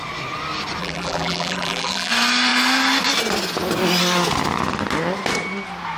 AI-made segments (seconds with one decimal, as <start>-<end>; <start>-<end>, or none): 0.8-2.1